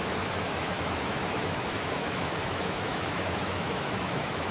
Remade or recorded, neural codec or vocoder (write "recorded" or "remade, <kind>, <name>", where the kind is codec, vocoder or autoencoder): remade, autoencoder, DAC-VAE